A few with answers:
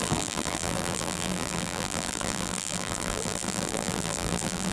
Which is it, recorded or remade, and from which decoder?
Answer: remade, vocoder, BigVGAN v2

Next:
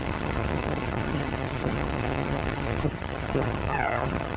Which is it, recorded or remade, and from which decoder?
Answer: remade, vocoder, HiFi-GAN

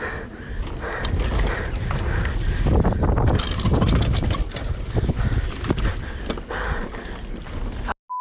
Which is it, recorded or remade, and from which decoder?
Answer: recorded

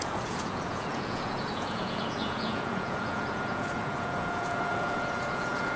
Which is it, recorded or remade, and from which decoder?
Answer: remade, vocoder, Vocos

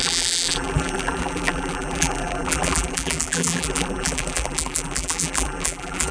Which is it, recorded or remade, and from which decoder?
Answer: remade, vocoder, BigVGAN v2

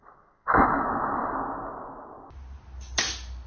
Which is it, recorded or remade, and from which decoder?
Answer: recorded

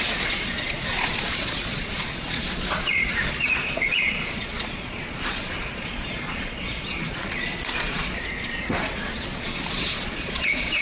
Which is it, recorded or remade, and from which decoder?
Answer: remade, vocoder, Vocos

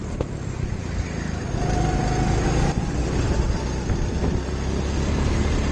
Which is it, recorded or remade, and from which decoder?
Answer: recorded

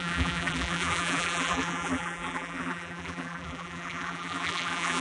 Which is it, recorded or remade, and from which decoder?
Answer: remade, vocoder, BigVGAN v2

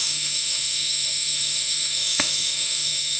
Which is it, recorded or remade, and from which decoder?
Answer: remade, autoencoder, DAC-VAE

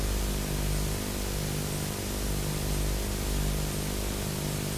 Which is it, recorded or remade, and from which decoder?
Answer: recorded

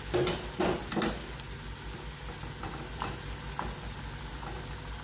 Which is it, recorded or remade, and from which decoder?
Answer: recorded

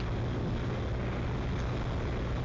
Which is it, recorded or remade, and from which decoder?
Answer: recorded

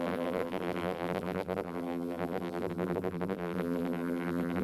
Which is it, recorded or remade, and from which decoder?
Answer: remade, vocoder, BigVGAN v2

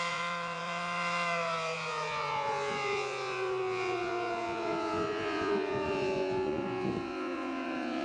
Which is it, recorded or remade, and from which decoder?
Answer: remade, vocoder, Vocos